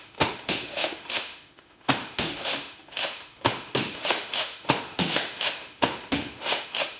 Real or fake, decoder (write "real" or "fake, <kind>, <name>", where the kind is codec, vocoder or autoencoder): fake, autoencoder, DAC-VAE